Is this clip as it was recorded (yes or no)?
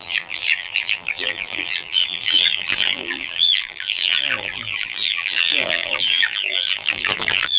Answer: no